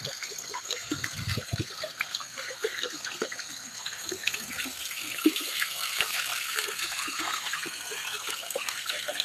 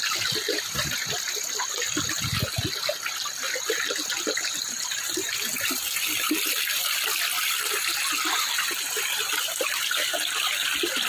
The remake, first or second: first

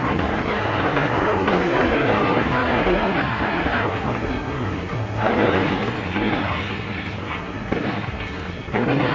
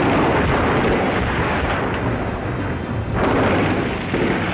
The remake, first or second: first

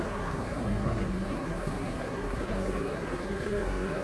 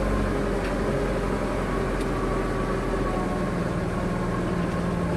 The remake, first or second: first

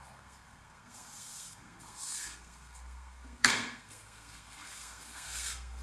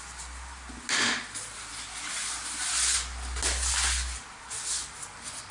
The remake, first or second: first